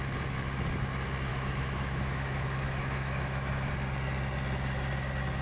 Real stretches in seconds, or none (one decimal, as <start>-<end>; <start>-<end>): 0.0-1.3; 3.7-5.4